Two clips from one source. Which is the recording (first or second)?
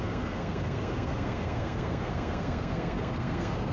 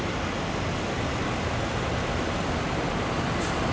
second